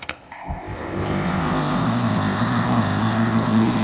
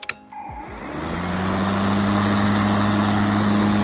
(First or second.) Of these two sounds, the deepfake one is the first